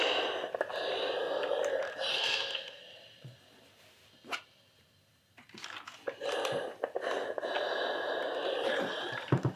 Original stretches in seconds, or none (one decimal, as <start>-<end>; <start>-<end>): 0.0-2.1; 2.8-9.6